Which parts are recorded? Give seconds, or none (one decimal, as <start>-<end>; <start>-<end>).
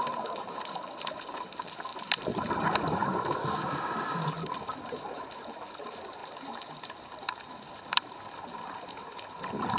none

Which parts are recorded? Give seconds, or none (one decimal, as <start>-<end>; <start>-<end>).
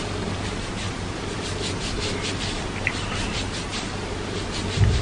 0.0-3.7; 4.6-5.0